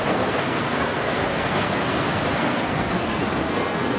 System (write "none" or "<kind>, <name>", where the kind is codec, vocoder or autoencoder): codec, SNAC